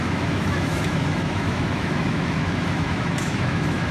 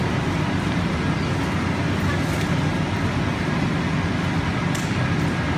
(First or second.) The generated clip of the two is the first